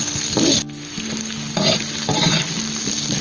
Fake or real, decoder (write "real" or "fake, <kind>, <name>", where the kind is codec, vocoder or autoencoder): real